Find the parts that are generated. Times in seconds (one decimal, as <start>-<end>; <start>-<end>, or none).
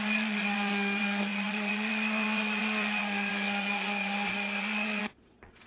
0.0-5.7